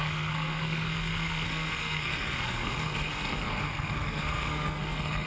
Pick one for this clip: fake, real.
fake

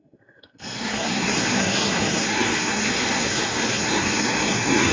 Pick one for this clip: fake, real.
fake